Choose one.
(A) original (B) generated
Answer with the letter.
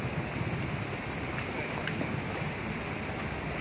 A